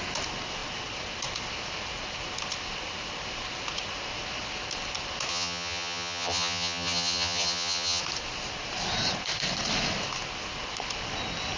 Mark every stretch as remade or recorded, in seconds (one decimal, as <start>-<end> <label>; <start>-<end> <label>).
0.0-5.3 recorded; 5.3-8.0 remade; 8.0-11.6 recorded

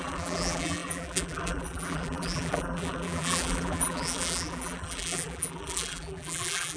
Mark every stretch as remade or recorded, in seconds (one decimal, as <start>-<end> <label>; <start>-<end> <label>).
0.0-6.8 remade